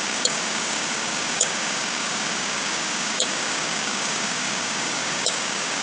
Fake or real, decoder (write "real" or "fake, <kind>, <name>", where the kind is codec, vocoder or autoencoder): fake, codec, DAC